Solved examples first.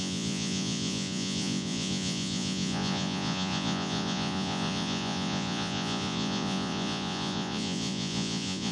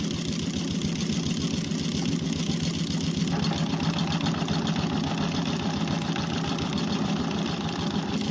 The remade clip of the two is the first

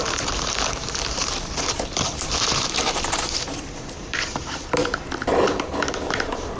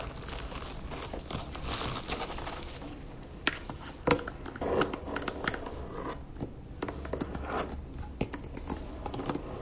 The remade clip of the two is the first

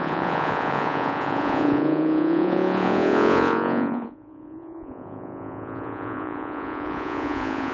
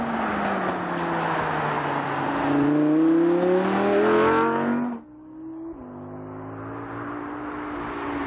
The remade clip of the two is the first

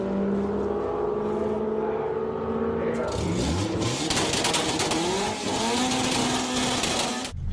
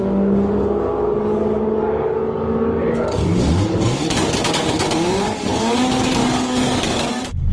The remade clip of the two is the second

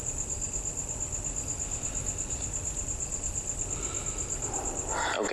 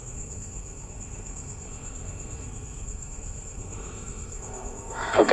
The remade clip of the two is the second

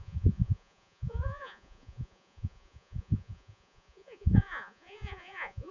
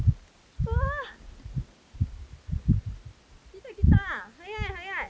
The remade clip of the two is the first